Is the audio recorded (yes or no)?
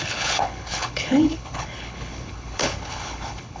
no